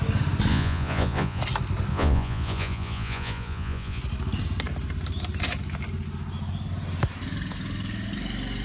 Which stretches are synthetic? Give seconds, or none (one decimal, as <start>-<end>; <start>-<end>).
0.5-1.4; 1.9-4.0